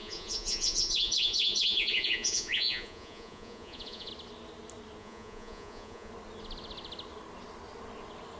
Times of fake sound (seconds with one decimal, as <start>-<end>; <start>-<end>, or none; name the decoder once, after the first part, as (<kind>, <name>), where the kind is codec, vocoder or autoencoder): 0.0-4.1 (vocoder, Vocos); 5.0-6.1